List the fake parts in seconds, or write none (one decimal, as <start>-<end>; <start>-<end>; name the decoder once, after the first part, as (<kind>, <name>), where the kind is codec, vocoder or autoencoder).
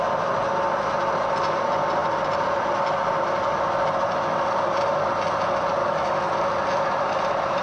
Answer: 5.8-6.3 (autoencoder, DAC-VAE)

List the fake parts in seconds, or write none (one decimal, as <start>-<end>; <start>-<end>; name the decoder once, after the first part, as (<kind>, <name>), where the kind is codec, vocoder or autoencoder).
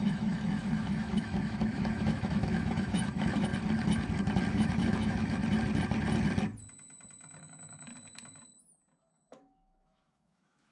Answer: 0.0-3.5 (autoencoder, DAC-VAE); 4.5-5.4; 7.4-7.9; 9.1-10.7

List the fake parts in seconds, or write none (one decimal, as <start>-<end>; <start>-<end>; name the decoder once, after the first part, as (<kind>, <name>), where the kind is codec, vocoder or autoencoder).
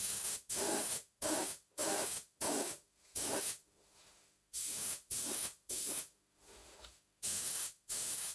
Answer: 0.0-8.3 (autoencoder, DAC-VAE)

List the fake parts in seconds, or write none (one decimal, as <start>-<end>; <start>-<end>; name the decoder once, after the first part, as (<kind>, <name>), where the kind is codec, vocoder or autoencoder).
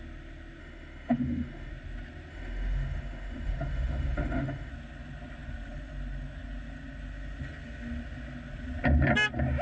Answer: 0.6-1.7 (autoencoder, DAC-VAE); 2.3-4.7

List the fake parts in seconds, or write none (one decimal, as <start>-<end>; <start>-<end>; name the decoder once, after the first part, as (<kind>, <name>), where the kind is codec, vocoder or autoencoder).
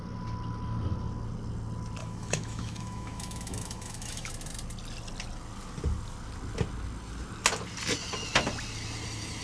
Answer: 2.0-4.3 (autoencoder, DAC-VAE)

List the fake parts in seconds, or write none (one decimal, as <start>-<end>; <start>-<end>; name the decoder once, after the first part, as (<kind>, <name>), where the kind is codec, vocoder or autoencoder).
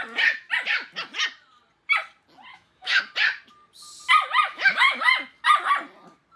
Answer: 2.5-3.0 (autoencoder, DAC-VAE); 4.5-5.1